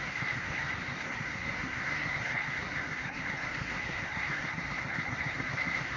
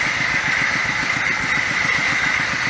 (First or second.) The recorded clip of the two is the second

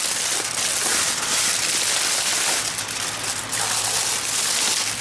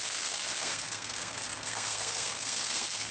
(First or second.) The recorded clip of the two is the first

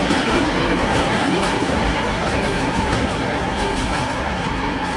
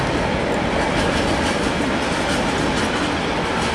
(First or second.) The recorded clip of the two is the second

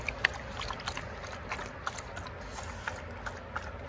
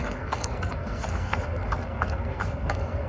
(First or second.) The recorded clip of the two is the first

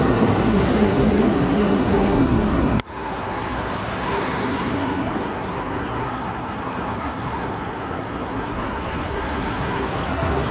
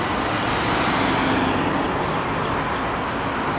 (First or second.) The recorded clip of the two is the second